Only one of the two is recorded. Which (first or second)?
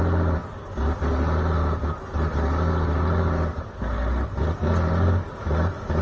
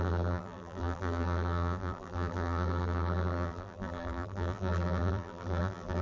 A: first